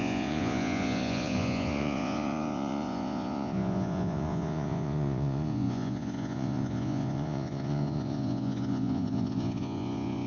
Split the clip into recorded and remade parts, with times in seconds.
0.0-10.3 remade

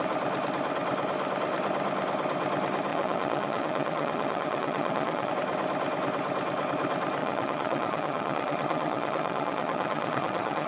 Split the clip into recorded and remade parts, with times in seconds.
0.0-2.9 recorded; 2.9-5.3 remade; 5.3-7.2 recorded; 7.2-10.7 remade

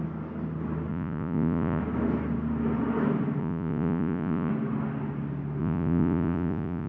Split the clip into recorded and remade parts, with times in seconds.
0.0-0.9 recorded; 0.9-1.8 remade; 1.8-3.4 recorded; 3.4-4.5 remade; 4.5-5.6 recorded; 5.6-6.9 remade